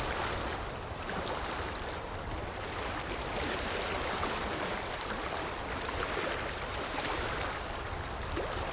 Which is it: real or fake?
real